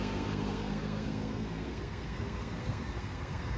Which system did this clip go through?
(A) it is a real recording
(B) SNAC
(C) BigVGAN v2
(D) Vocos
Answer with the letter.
B